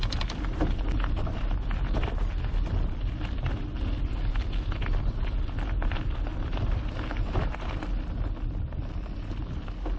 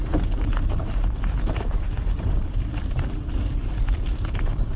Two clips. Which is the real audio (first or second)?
first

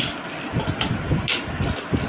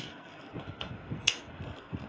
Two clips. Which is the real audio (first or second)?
first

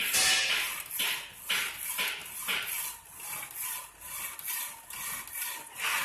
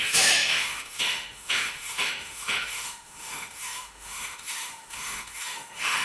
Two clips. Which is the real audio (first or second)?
first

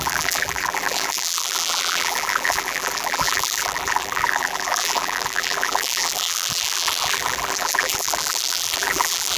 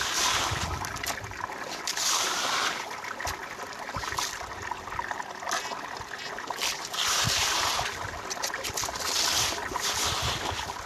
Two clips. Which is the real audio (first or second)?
second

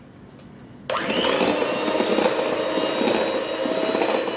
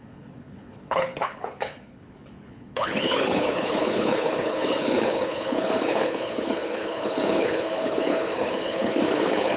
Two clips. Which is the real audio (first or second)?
first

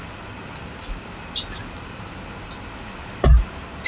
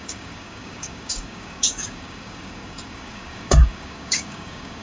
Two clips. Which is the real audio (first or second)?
first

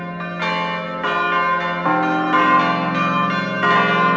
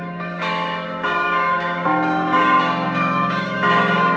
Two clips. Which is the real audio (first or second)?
first